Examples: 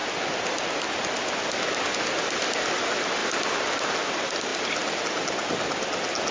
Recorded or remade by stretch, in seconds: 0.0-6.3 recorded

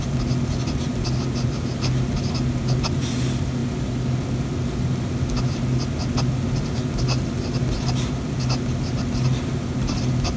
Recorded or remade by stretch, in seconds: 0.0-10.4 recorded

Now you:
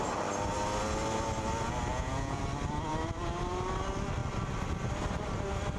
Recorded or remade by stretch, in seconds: 0.0-1.9 recorded; 1.9-2.4 remade; 2.4-5.8 recorded